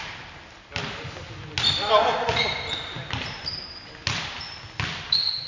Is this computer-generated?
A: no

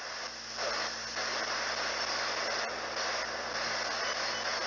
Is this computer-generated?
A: no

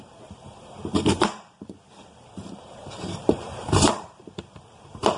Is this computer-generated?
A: yes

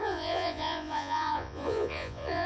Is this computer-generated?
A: yes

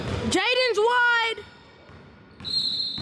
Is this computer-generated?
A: no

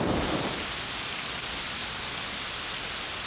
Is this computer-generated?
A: no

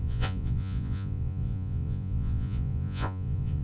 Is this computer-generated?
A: yes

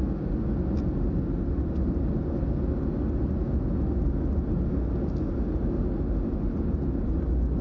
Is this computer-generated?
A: no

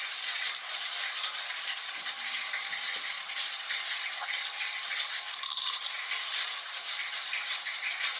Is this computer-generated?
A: no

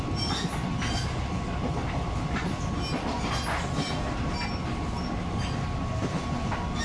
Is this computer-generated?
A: no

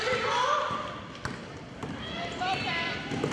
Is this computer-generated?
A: no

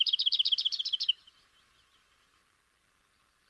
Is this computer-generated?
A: no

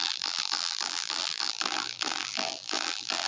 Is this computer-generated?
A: yes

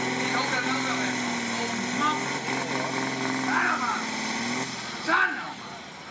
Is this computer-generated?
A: no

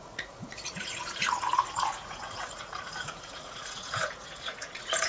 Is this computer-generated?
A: yes